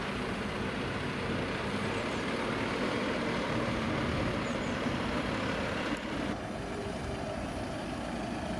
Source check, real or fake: fake